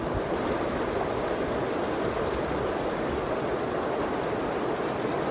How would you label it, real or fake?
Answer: real